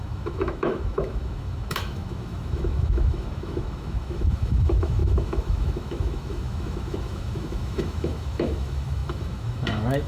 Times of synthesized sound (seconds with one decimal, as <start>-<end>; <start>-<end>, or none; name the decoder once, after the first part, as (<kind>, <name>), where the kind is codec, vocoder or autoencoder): 0.0-10.1 (autoencoder, DAC-VAE)